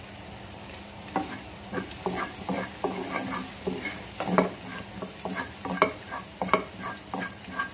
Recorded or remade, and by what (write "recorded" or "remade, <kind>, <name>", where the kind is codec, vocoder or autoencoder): recorded